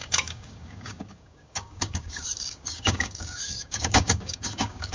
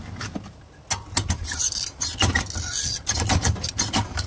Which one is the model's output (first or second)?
first